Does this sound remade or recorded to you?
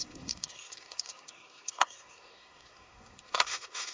remade